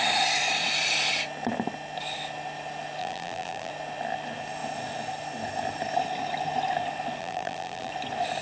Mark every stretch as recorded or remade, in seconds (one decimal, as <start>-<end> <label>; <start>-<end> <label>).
0.0-3.0 recorded; 3.0-3.7 remade; 3.7-7.2 recorded; 7.2-7.9 remade; 7.9-8.4 recorded